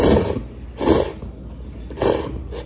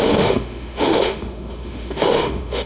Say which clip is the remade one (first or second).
second